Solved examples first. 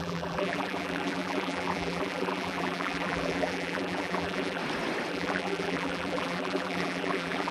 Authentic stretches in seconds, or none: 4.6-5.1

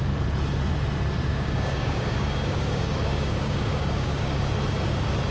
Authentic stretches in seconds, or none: 0.0-1.3; 4.5-5.3

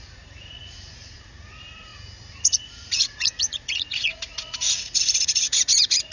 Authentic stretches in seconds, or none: none